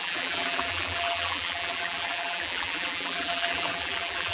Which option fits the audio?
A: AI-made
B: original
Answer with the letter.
A